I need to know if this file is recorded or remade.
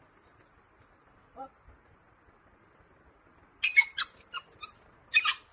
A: recorded